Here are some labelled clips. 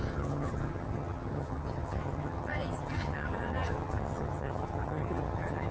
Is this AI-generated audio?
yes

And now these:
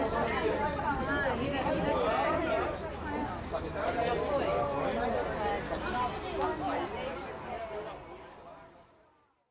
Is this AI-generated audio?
no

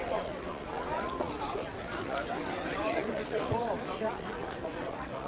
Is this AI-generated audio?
yes